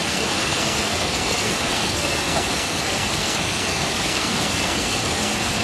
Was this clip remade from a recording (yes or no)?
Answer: yes